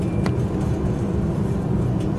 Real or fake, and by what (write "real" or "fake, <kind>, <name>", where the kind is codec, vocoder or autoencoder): real